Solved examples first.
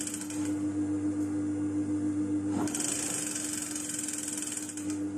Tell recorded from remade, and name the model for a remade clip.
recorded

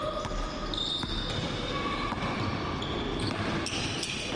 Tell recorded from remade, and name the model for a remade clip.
recorded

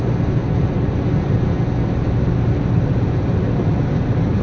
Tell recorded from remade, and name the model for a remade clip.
recorded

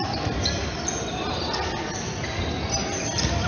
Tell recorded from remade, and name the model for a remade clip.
recorded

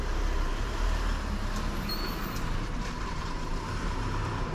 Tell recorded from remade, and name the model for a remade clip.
remade, vocoder, BigVGAN v2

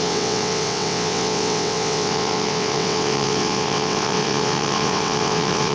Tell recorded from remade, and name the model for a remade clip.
remade, vocoder, WaveNeXt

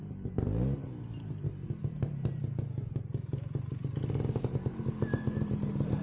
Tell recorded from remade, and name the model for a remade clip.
recorded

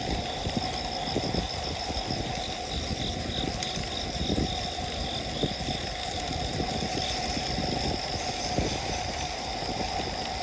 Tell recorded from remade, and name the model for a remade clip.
recorded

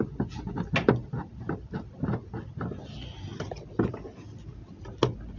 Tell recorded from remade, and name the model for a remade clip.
recorded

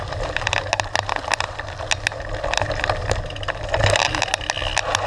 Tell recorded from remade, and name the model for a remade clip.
recorded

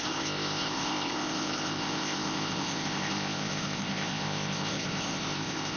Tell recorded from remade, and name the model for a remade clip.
remade, codec, ZipCodec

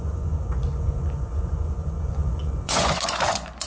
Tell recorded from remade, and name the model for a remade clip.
remade, vocoder, Vocos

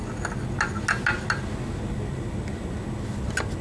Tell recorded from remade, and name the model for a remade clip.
recorded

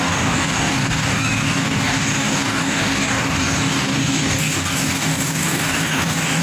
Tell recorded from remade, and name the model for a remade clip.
remade, codec, DAC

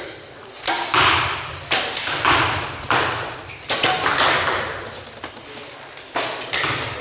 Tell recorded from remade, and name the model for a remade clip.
recorded